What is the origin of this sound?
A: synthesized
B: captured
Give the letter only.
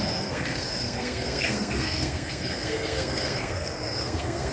A